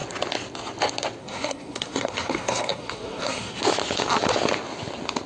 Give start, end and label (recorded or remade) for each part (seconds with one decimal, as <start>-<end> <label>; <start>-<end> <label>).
0.0-1.2 recorded; 1.2-3.6 remade; 3.6-5.3 recorded